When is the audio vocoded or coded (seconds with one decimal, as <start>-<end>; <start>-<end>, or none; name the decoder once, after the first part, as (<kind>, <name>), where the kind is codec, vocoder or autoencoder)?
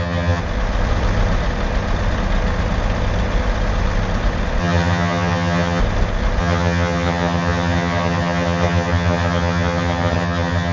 0.0-0.4 (vocoder, HiFi-GAN); 4.6-5.8; 6.4-10.7